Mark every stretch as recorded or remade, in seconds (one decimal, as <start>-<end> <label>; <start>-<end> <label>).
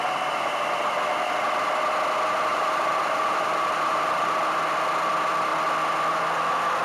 0.0-2.5 recorded; 2.5-4.3 remade; 4.3-6.8 recorded